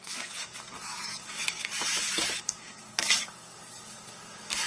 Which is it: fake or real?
fake